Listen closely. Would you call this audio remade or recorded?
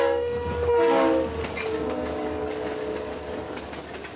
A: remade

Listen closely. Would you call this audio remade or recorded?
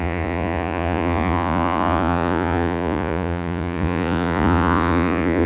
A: remade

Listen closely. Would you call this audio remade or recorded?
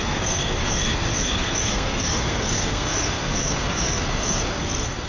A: remade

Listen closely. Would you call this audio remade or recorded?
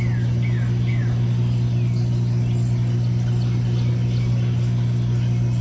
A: recorded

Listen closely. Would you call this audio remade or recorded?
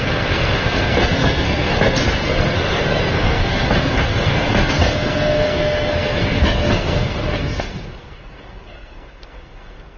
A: remade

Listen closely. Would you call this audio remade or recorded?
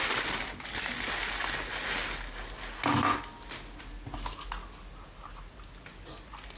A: recorded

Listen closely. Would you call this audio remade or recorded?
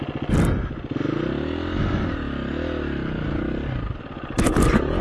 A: recorded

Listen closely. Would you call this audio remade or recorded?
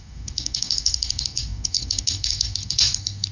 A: remade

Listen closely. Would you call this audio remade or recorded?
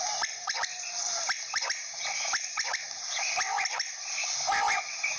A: recorded